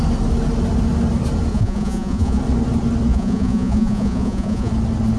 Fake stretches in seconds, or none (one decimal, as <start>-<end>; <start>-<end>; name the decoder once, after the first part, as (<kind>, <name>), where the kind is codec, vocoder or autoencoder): 1.5-2.4 (vocoder, Vocos); 3.1-4.7